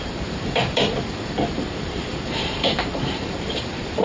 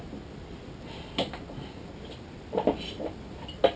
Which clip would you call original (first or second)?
second